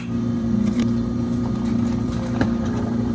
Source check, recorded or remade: remade